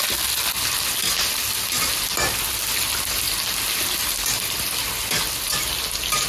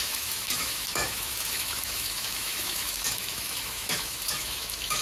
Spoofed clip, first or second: second